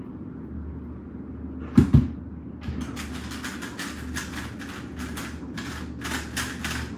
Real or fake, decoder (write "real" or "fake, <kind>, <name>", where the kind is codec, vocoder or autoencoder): real